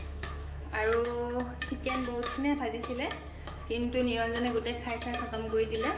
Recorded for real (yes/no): no